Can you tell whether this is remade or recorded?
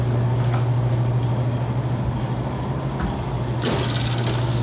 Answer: recorded